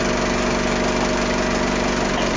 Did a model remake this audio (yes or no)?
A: no